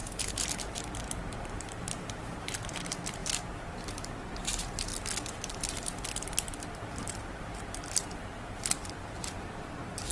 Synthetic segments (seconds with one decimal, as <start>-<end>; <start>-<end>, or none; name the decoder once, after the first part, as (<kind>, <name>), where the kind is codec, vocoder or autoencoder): 0.0-4.9 (vocoder, BigVGAN v2); 6.8-10.1